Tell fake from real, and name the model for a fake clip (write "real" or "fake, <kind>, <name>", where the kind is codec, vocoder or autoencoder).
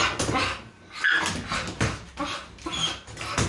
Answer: real